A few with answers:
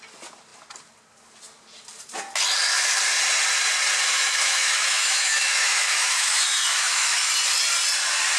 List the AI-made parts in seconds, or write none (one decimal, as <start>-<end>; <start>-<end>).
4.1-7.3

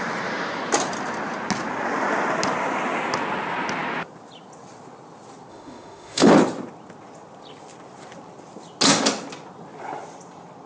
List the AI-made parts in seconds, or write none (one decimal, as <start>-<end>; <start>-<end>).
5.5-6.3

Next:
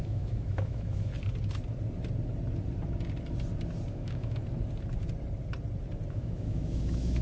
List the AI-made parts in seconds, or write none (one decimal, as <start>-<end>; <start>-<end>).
0.0-1.1; 3.9-4.4; 6.1-7.2